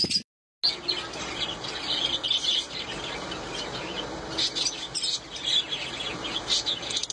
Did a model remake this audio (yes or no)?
no